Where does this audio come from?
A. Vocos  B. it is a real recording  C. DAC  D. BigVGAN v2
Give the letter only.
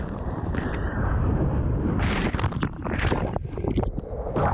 D